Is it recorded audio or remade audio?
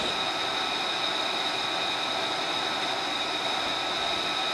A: recorded